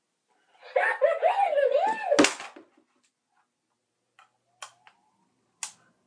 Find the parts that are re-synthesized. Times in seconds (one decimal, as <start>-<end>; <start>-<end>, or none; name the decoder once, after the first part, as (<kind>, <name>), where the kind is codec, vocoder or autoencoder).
none